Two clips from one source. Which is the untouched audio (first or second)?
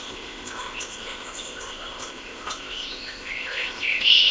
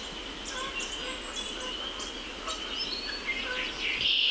second